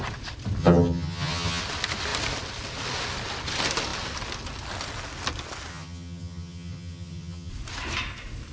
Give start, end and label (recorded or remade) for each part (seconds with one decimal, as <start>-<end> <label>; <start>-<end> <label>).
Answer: 0.0-0.6 recorded; 0.6-1.6 remade; 1.6-5.7 recorded; 5.7-7.5 remade; 7.5-8.5 recorded